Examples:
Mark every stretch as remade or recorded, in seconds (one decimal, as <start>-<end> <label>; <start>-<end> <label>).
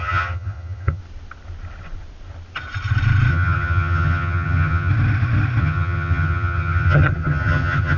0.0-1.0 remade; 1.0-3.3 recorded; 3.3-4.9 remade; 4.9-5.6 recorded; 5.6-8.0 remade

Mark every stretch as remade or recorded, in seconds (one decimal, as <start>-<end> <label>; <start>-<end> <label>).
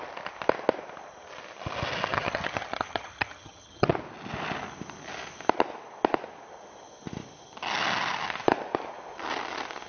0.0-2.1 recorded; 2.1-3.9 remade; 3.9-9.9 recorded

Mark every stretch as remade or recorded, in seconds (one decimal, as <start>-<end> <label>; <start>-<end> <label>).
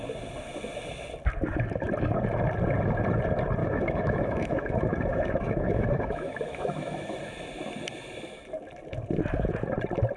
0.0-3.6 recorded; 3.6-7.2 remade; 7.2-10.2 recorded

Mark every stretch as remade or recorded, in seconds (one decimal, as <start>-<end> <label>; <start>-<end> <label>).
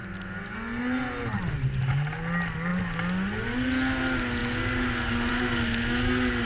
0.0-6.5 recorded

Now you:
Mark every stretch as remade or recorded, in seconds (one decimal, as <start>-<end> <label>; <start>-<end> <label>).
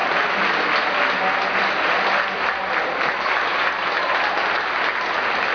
0.0-5.5 recorded